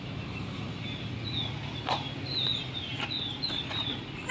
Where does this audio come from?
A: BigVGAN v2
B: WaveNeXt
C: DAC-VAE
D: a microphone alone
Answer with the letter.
D